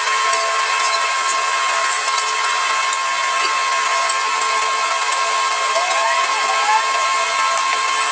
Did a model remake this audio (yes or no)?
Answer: no